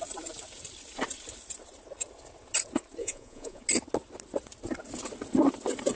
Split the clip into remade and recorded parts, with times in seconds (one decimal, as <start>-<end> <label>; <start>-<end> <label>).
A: 0.0-3.0 recorded; 3.0-3.6 remade; 3.6-6.0 recorded